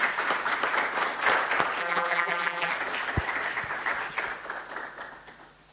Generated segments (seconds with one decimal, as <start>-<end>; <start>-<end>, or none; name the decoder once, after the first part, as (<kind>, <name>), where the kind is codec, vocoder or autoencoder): 1.8-2.7 (vocoder, BigVGAN v2)